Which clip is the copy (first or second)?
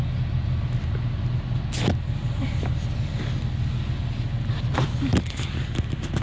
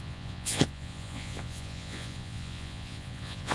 second